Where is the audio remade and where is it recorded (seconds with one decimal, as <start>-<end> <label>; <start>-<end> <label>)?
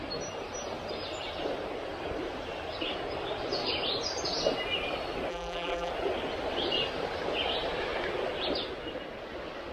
0.0-5.3 recorded; 5.3-5.9 remade; 5.9-9.7 recorded